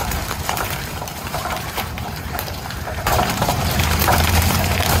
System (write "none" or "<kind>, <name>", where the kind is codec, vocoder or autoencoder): vocoder, BigVGAN v2